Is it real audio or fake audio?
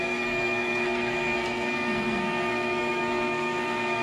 fake